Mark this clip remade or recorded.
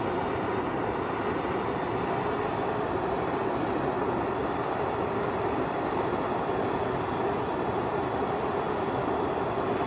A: recorded